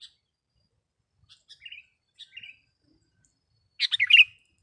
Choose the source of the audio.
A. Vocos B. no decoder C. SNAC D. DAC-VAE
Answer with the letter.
B